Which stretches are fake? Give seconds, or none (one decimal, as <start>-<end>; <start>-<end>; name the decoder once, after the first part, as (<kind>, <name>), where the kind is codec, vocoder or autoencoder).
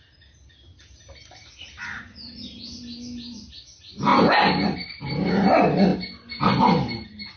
none